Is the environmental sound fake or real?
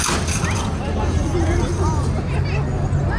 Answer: real